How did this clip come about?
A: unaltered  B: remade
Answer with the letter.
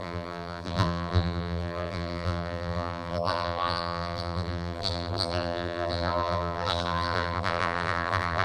B